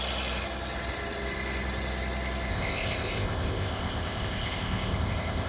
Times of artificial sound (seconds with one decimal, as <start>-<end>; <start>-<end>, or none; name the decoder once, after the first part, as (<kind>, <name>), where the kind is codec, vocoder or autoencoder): 2.5-5.5 (codec, ZipCodec)